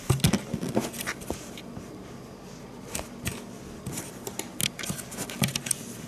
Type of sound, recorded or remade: recorded